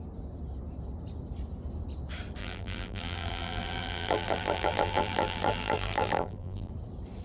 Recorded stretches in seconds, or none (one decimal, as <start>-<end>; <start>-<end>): 0.0-2.4; 6.7-7.2